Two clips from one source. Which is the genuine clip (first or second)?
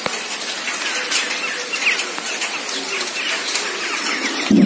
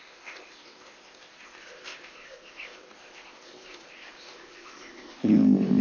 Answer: first